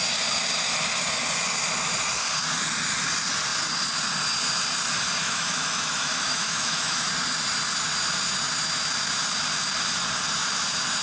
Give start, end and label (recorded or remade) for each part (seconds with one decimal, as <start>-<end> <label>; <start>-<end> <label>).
0.0-5.2 recorded; 5.2-7.1 remade; 7.1-11.0 recorded

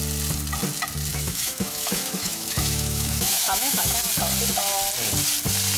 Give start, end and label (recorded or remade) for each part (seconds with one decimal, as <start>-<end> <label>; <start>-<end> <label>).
0.0-1.1 recorded; 1.1-4.0 remade; 4.0-5.8 recorded

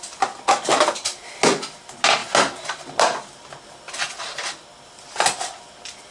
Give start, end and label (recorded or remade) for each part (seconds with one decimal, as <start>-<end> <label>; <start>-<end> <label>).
0.0-6.1 recorded

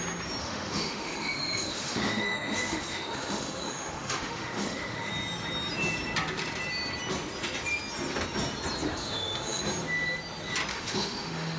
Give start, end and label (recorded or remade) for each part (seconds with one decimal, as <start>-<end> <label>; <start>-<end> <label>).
0.0-0.4 recorded; 0.4-5.1 remade; 5.1-8.9 recorded; 8.9-9.6 remade; 9.6-10.7 recorded; 10.7-11.6 remade

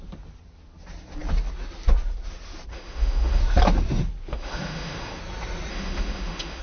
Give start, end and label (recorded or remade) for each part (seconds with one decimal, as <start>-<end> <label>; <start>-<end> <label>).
0.0-2.7 recorded; 2.7-3.4 remade; 3.4-4.3 recorded; 4.3-5.2 remade; 5.2-5.7 recorded; 5.7-6.6 remade

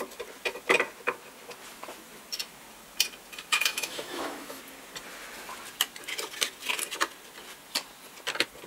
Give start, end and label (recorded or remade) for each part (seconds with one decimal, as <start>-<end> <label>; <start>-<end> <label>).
0.0-3.5 recorded; 3.5-4.6 remade; 4.6-8.7 recorded

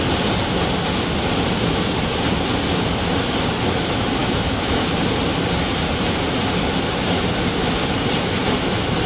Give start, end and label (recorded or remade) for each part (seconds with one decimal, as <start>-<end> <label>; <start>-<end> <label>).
0.0-4.2 recorded; 4.2-4.9 remade; 4.9-9.1 recorded

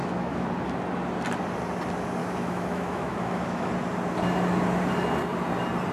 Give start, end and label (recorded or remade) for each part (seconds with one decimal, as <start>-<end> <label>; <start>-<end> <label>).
0.0-0.5 remade; 0.5-2.2 recorded; 2.2-3.7 remade; 3.7-5.9 recorded